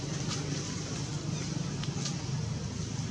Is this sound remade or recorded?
recorded